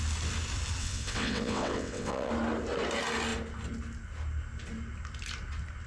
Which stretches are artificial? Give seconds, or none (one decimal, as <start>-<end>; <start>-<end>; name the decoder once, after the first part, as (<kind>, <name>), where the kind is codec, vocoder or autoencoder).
0.8-2.3 (vocoder, WaveNeXt)